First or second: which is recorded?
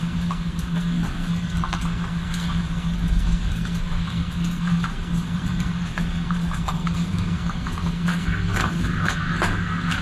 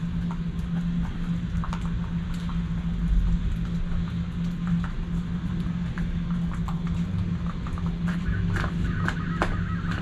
second